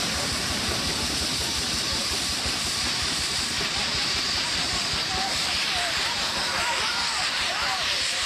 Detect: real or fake fake